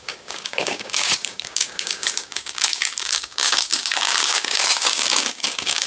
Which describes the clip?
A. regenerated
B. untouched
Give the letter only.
A